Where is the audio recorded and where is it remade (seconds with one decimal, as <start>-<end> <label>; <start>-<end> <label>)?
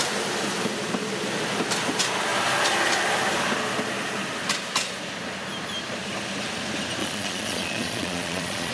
0.0-7.0 recorded; 7.0-8.7 remade